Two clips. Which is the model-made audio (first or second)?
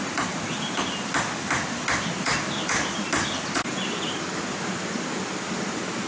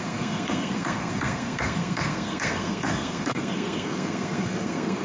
second